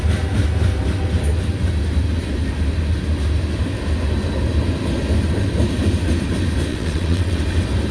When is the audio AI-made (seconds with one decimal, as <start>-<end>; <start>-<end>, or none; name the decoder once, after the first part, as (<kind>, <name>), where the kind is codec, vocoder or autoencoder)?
6.7-7.4 (vocoder, WaveNeXt)